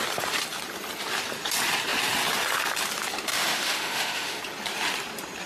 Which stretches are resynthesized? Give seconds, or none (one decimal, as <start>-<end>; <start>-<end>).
3.3-4.4